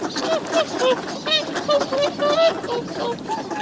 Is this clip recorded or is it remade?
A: recorded